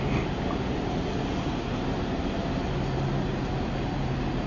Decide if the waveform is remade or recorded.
recorded